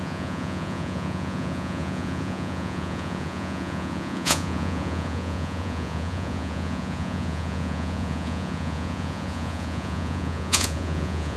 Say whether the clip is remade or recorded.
remade